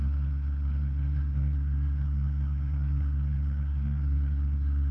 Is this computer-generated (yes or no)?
yes